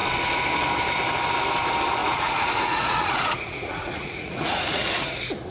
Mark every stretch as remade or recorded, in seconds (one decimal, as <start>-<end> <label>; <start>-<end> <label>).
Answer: 0.0-2.0 recorded; 2.0-5.5 remade

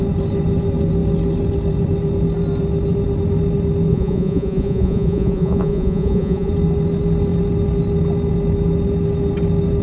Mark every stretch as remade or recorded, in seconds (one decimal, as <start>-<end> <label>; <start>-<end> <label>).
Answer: 0.0-3.9 recorded; 3.9-6.5 remade; 6.5-9.8 recorded

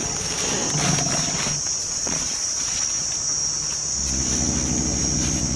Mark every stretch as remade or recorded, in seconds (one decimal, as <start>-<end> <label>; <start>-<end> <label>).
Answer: 0.0-1.8 recorded; 1.8-2.8 remade; 2.8-5.6 recorded

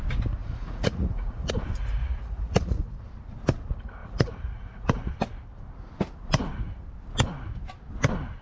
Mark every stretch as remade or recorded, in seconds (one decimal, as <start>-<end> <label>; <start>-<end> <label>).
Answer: 0.0-0.4 recorded; 0.4-1.5 remade; 1.5-2.0 recorded; 2.0-2.8 remade; 2.8-4.0 recorded; 4.0-5.1 remade; 5.1-8.4 recorded

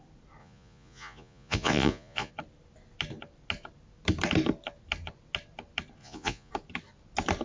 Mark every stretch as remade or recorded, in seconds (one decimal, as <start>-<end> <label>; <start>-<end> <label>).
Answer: 0.0-0.4 recorded; 0.4-2.3 remade; 2.3-6.0 recorded; 6.0-6.5 remade; 6.5-7.4 recorded

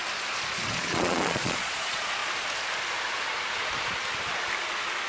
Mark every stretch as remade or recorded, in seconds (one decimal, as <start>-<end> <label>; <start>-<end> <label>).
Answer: 0.0-0.7 recorded; 0.7-2.2 remade; 2.2-5.1 recorded

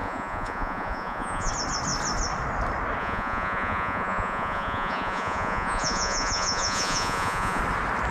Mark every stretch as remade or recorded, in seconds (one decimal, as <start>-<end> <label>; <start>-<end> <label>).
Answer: 0.0-1.5 remade; 1.5-3.0 recorded; 3.0-7.6 remade; 7.6-8.1 recorded

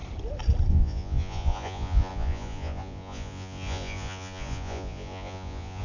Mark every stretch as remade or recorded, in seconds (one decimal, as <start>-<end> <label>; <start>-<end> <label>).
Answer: 0.0-0.7 recorded; 0.7-5.8 remade